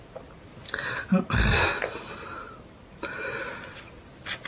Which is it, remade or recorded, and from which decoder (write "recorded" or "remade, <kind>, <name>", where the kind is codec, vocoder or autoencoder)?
recorded